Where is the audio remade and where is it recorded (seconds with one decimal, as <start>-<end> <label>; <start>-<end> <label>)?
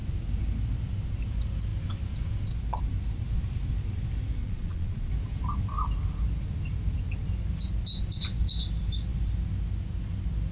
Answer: 0.0-4.4 recorded; 4.4-5.1 remade; 5.1-10.5 recorded